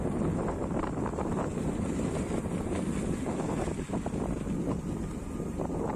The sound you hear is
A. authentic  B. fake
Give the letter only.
A